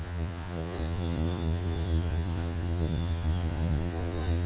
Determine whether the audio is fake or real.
fake